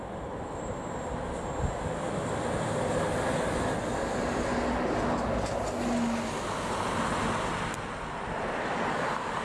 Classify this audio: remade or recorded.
recorded